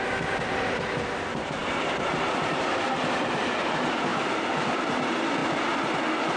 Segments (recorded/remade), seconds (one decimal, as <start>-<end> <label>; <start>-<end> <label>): 0.0-4.1 recorded; 4.1-4.9 remade; 4.9-6.4 recorded